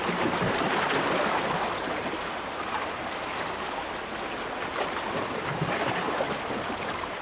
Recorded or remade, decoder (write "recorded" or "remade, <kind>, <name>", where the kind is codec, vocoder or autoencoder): recorded